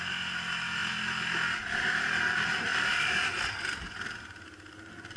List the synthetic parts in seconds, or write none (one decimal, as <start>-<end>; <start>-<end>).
none